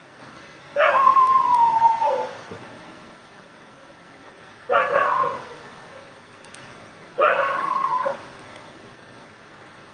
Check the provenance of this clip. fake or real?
fake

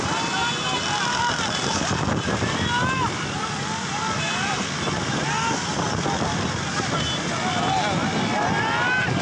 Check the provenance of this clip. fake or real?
real